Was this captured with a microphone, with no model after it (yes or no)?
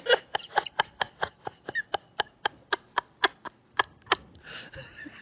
yes